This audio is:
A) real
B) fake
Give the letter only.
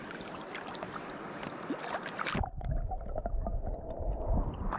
A